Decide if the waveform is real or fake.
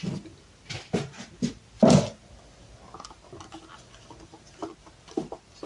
real